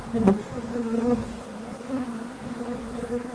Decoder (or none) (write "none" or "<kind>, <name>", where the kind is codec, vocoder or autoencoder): codec, SNAC